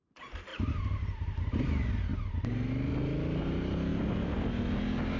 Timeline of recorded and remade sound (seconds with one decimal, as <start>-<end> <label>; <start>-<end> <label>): 0.0-5.2 recorded